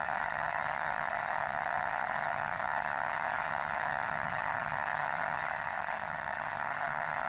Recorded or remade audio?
remade